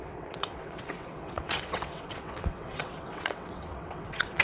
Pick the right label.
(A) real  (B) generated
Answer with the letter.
B